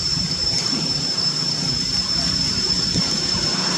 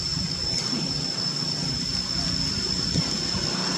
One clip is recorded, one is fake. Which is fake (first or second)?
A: first